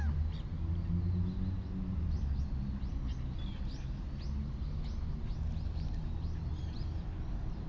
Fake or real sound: real